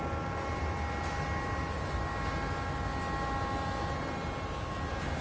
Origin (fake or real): real